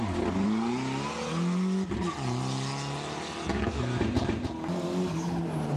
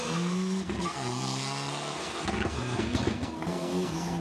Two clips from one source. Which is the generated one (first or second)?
second